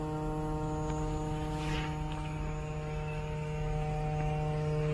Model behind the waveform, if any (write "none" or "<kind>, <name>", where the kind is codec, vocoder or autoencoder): none